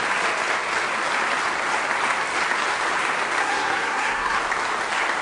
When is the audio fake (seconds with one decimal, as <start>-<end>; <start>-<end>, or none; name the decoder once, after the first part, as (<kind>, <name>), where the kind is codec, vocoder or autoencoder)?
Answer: 3.4-4.4 (codec, SNAC)